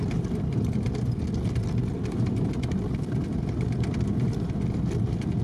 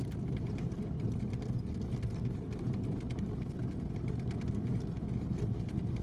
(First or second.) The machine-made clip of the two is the first